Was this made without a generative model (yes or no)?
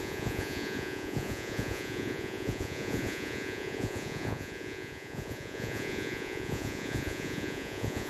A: no